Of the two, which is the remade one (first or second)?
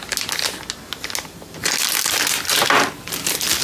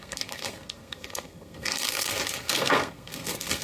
second